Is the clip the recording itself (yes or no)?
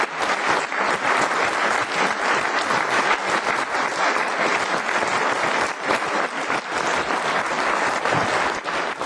yes